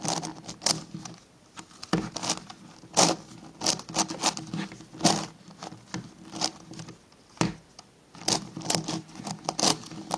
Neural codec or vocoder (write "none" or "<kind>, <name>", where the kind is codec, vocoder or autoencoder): none